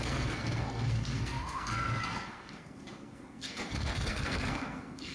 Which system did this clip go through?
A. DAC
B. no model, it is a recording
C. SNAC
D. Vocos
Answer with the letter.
C